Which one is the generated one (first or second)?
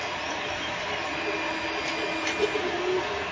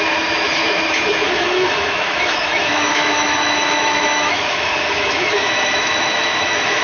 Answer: second